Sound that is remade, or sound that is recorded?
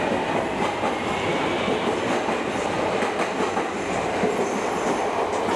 recorded